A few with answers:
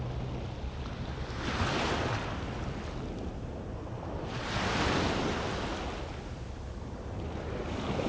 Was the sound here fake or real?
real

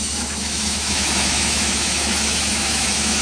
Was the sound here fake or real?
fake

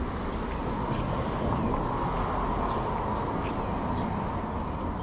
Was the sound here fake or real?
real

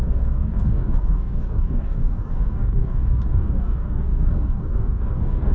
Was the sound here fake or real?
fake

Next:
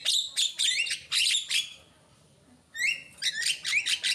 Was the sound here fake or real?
real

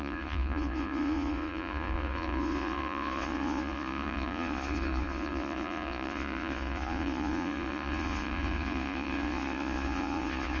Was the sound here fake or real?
fake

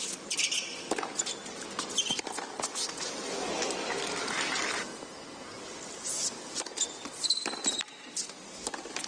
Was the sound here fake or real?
real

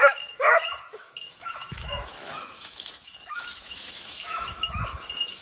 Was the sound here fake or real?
fake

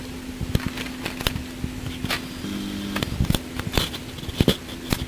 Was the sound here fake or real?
real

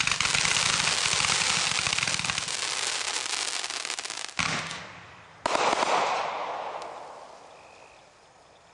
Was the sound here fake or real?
real